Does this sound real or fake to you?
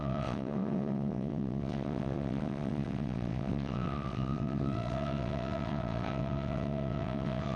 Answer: fake